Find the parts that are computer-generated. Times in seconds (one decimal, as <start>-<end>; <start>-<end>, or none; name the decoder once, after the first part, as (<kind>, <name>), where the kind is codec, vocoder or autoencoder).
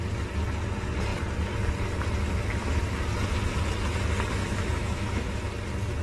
4.4-5.4 (autoencoder, DAC-VAE)